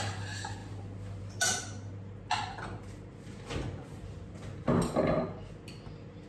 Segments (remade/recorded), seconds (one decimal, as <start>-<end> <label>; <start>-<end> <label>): 0.0-6.3 recorded